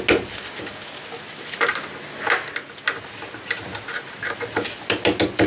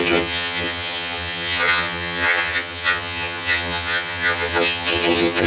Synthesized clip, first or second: second